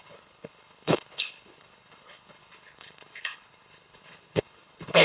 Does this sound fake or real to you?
fake